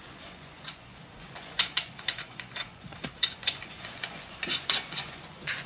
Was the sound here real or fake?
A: fake